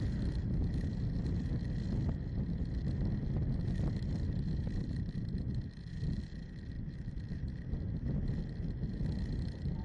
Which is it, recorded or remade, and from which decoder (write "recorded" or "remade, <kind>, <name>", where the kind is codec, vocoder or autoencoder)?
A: recorded